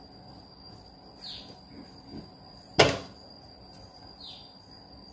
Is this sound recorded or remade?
recorded